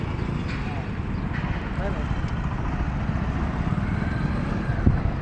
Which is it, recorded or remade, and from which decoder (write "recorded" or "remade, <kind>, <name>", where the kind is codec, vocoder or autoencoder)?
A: recorded